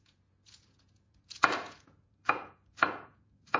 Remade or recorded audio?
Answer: remade